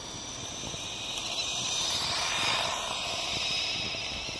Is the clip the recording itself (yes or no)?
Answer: yes